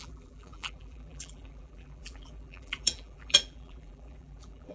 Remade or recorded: remade